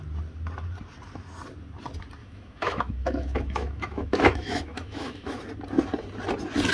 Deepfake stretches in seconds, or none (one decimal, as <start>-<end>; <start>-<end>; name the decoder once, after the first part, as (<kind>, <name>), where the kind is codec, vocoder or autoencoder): 2.2-5.4 (autoencoder, DAC-VAE)